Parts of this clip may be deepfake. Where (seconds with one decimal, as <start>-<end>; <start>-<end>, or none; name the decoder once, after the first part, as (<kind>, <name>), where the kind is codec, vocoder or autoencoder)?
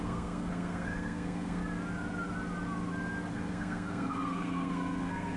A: 0.0-1.6 (codec, SNAC); 3.3-5.4